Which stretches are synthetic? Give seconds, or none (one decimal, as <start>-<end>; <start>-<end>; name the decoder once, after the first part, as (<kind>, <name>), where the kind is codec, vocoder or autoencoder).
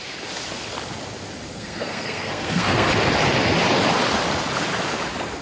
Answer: 1.5-2.9 (codec, SNAC)